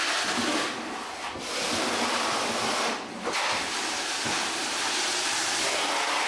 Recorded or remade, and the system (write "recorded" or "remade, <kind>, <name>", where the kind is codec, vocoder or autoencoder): recorded